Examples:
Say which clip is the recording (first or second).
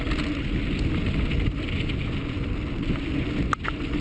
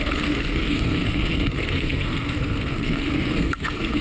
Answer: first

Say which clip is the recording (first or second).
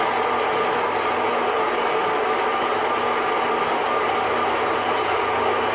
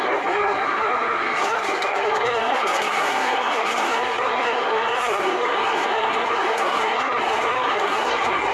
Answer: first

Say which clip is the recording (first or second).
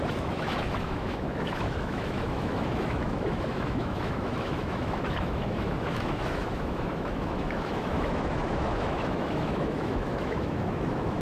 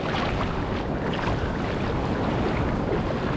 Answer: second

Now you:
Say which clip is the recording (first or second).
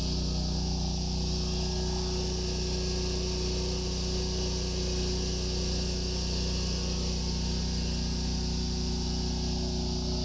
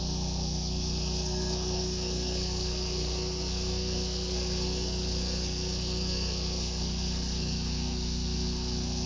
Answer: first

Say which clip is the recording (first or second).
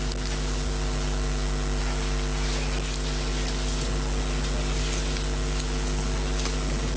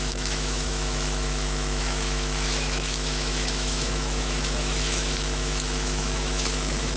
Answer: first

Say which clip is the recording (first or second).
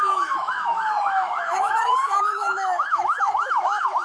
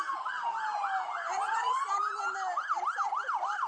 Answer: second